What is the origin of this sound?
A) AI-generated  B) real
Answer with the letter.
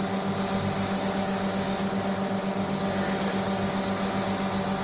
B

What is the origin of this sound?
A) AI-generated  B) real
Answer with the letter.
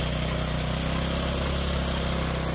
B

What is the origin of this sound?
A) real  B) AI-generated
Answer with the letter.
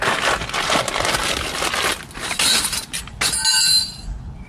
A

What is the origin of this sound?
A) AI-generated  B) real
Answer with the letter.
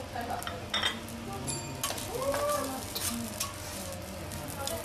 B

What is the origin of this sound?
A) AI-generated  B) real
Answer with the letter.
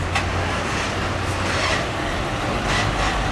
B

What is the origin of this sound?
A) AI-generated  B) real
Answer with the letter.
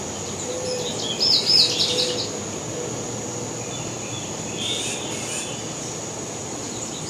B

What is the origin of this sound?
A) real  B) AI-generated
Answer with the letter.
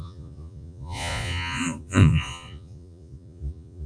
B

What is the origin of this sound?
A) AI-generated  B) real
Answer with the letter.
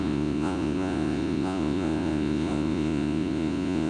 A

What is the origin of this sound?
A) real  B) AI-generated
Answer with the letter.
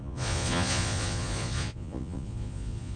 B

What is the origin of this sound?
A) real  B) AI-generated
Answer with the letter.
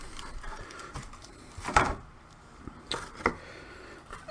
B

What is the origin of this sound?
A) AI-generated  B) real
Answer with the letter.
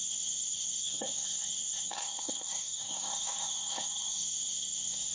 A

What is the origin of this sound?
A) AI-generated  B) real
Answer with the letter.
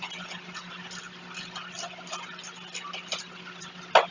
B